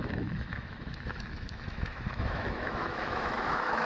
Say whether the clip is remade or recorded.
remade